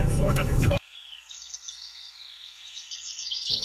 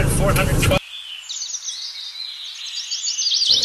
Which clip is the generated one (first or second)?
first